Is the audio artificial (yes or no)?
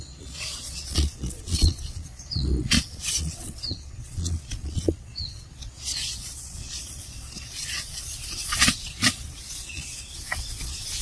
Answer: yes